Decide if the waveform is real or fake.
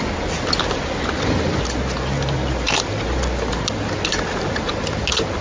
real